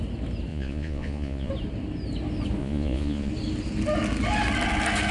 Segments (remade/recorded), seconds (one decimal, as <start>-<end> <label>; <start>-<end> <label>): 0.0-0.5 recorded; 0.5-1.5 remade; 1.5-2.6 recorded; 2.6-3.3 remade; 3.3-5.1 recorded